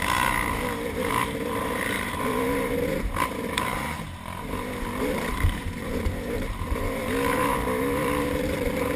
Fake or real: fake